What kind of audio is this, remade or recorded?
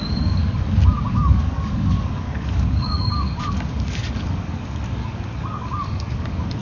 remade